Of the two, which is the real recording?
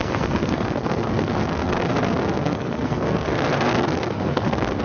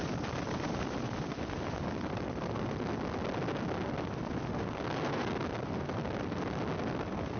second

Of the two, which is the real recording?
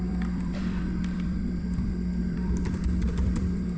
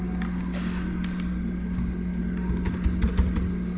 second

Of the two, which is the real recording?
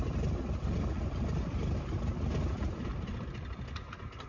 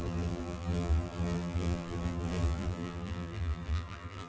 first